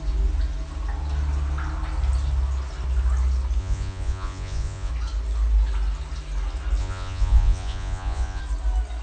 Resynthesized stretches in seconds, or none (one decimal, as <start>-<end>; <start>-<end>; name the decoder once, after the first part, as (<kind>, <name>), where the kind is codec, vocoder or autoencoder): 3.6-4.9 (vocoder, Vocos); 6.8-8.4